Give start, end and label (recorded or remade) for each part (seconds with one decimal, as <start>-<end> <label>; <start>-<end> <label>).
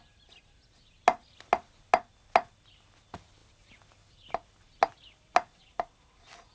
0.0-6.5 recorded